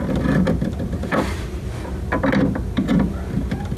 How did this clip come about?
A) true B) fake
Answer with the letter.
A